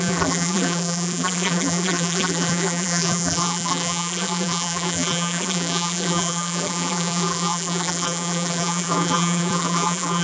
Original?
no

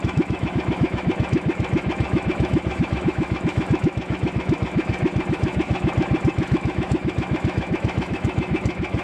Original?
no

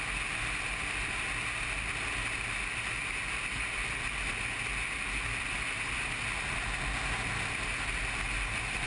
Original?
yes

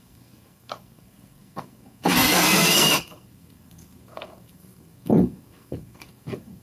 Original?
no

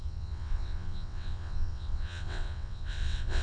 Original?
no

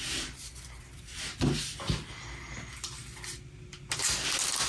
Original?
yes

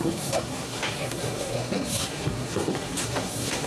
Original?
no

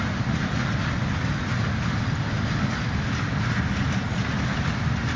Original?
yes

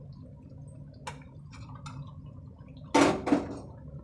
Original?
yes